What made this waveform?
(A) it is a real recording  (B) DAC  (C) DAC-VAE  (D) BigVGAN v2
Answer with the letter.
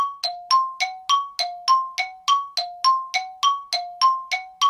A